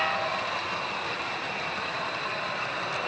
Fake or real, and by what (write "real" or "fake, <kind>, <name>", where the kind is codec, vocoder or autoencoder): real